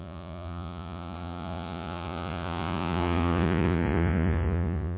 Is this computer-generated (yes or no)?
yes